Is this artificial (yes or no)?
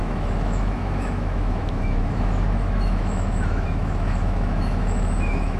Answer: yes